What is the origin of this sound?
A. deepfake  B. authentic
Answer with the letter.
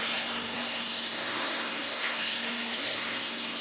A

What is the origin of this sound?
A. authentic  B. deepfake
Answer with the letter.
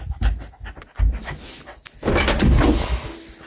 A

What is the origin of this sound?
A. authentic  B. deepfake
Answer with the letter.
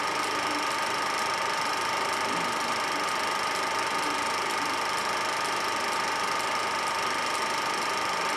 A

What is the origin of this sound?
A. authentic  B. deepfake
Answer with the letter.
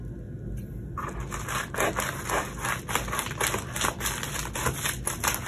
A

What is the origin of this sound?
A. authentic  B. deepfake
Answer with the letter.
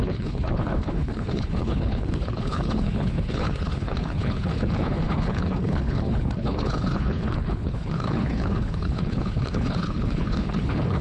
B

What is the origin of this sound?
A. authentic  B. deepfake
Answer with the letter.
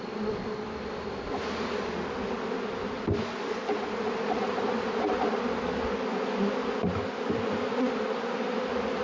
A